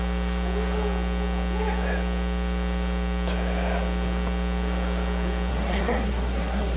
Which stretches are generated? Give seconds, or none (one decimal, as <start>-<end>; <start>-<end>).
5.5-6.8